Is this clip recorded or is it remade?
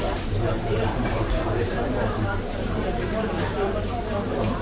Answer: remade